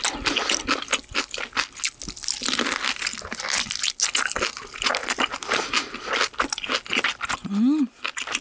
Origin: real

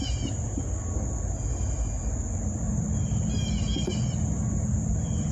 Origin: real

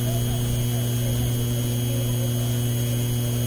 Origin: real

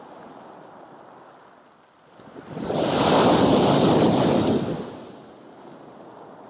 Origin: real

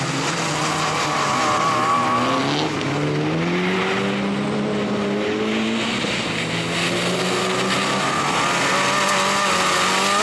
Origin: real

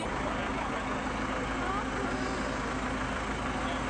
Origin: real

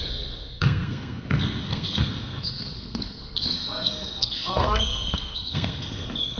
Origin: fake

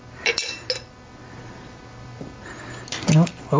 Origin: real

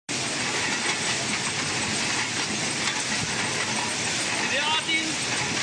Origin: real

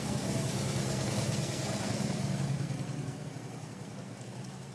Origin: fake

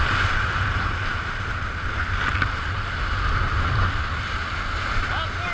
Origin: real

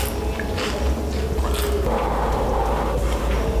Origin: real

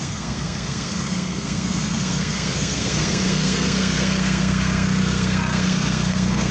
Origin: fake